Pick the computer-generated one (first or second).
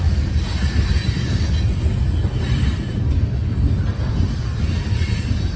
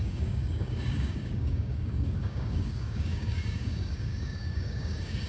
second